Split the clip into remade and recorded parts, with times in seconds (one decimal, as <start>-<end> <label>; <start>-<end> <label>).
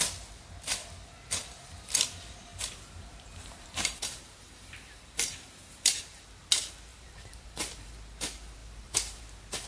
0.0-2.5 recorded; 2.5-6.2 remade; 6.2-6.9 recorded; 6.9-7.9 remade; 7.9-8.6 recorded; 8.6-9.2 remade; 9.2-9.7 recorded